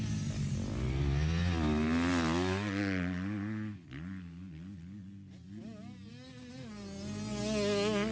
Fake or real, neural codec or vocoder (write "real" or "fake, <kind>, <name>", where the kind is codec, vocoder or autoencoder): real